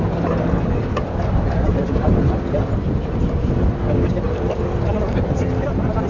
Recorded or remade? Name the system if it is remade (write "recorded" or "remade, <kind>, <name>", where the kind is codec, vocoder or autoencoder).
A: recorded